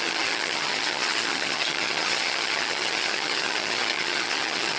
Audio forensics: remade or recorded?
remade